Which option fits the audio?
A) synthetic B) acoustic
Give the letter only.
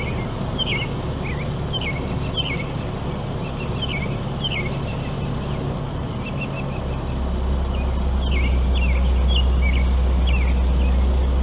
B